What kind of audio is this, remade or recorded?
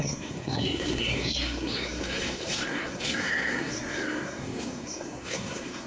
remade